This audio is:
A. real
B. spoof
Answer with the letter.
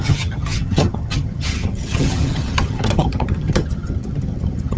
B